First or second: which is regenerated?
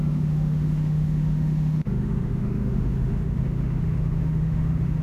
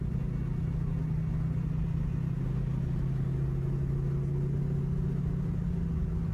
first